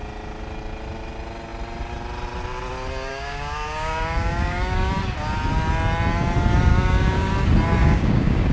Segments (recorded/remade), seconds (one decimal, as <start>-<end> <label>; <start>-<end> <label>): 0.0-3.1 recorded; 3.1-4.9 remade; 4.9-6.7 recorded; 6.7-7.3 remade; 7.3-7.8 recorded; 7.8-8.5 remade